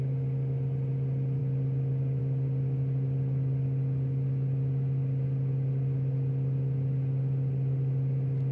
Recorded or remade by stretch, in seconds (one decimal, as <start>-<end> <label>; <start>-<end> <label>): 0.0-8.5 recorded